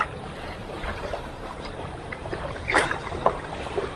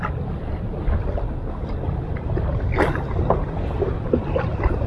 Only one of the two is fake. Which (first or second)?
first